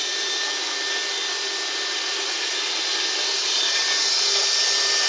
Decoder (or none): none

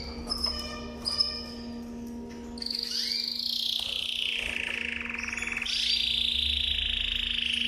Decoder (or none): none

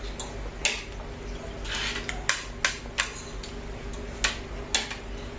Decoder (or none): none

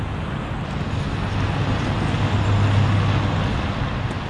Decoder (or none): none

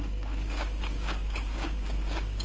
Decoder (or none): codec, DAC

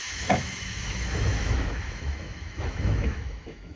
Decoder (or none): autoencoder, DAC-VAE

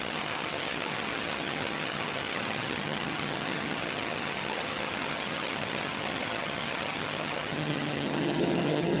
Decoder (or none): vocoder, HiFi-GAN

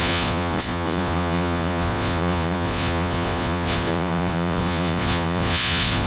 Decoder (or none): vocoder, Vocos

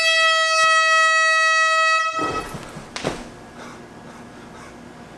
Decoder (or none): none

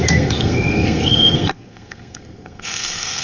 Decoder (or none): codec, SNAC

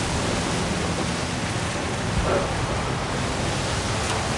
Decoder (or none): none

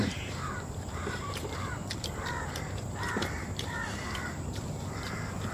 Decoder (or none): vocoder, BigVGAN v2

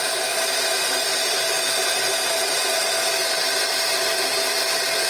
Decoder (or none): none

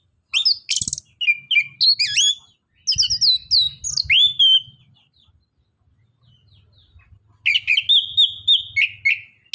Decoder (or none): none